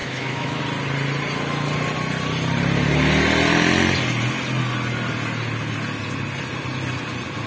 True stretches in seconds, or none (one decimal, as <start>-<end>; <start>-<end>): 0.6-7.5

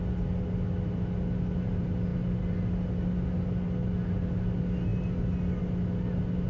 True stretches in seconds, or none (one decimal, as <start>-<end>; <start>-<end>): 0.0-6.5

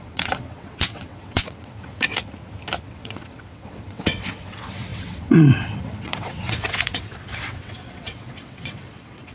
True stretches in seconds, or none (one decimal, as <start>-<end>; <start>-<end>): 2.1-2.8

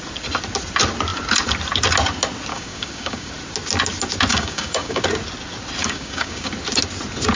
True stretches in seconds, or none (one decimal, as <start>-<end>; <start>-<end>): 0.0-2.5; 3.3-4.3; 5.0-5.8; 6.5-7.4

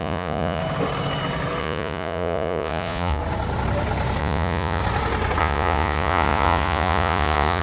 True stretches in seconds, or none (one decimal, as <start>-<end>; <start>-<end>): 0.6-1.6; 3.2-4.2; 4.8-5.4